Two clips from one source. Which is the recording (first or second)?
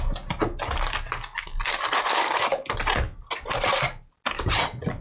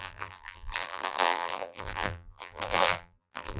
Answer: first